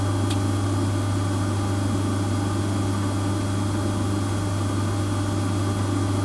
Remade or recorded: recorded